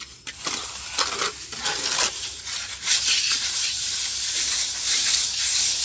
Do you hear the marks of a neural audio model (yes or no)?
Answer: no